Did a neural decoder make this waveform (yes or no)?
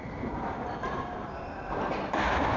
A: no